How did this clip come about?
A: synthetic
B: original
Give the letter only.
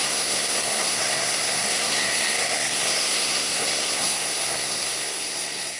A